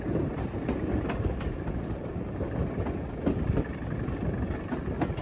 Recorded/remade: recorded